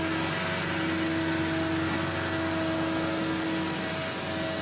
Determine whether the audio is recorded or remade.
recorded